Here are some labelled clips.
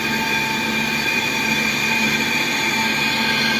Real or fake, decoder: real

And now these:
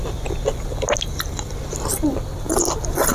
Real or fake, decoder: real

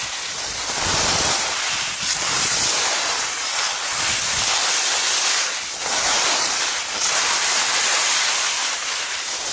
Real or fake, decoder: fake, vocoder, BigVGAN v2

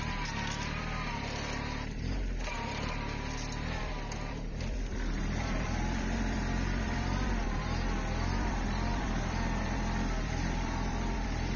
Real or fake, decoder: fake, vocoder, BigVGAN v2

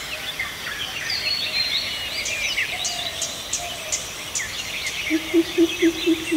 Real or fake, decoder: real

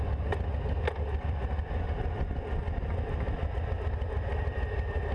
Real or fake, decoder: real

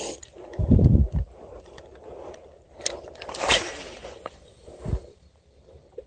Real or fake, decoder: fake, vocoder, BigVGAN v2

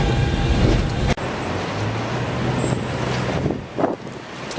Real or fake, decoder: real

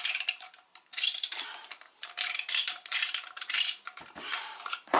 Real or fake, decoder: fake, vocoder, BigVGAN v2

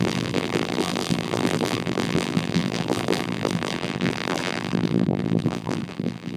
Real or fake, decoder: fake, vocoder, BigVGAN v2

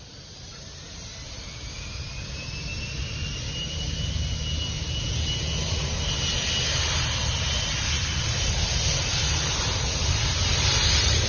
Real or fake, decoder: real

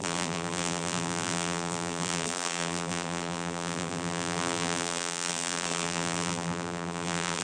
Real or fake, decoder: fake, vocoder, BigVGAN v2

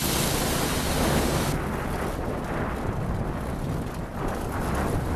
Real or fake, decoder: real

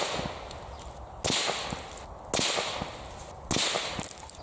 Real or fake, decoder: real